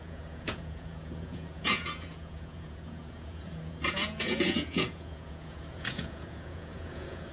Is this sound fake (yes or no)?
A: yes